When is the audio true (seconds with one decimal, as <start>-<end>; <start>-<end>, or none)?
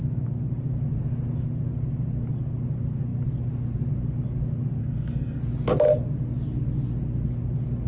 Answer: 0.0-4.8; 5.4-7.9